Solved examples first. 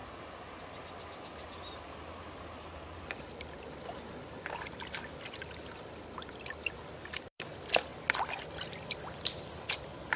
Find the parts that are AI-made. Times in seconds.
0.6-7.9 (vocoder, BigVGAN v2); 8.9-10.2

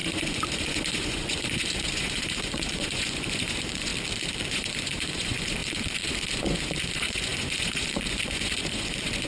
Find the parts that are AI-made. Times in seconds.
0.0-3.9 (vocoder, Vocos); 4.5-9.3

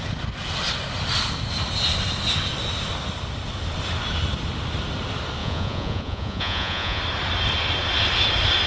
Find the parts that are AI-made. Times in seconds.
5.4-7.0 (vocoder, Vocos)

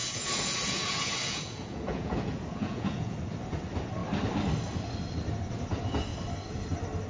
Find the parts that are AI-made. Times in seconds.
0.0-3.2 (vocoder, Vocos)

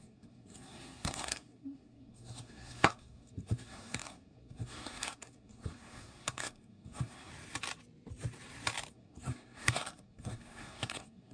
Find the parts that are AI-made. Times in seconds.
0.0-7.3 (codec, SNAC); 8.9-11.3

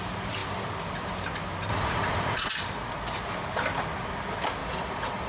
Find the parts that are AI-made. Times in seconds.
1.7-2.5 (vocoder, Vocos); 4.6-5.3

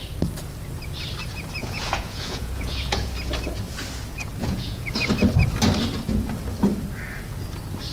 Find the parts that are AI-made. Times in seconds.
1.6-3.1 (vocoder, Vocos); 4.4-4.9